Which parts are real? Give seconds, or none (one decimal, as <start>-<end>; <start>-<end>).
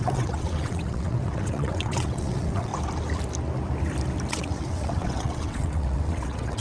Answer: 2.7-4.3